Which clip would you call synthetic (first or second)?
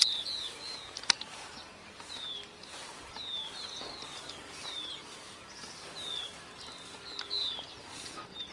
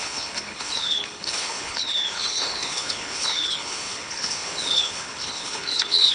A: second